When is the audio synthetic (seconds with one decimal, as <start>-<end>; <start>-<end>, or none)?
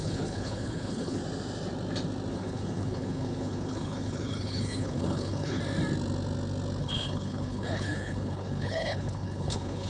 0.0-1.2; 2.3-5.6; 6.8-9.9